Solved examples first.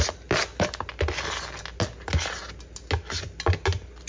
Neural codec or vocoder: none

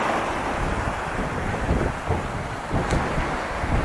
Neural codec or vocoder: none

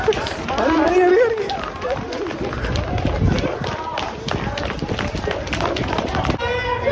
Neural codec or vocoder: none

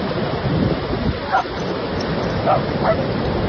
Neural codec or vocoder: none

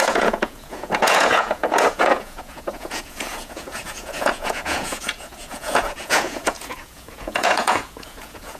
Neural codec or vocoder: vocoder, Vocos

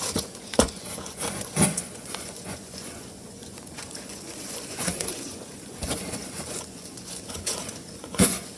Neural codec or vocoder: vocoder, Vocos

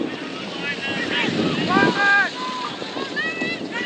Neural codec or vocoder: none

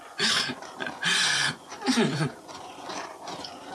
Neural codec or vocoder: vocoder, Vocos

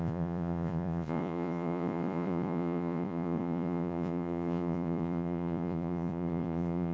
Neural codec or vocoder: vocoder, Vocos